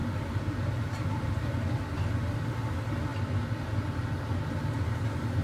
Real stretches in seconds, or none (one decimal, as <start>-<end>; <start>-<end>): 1.8-5.4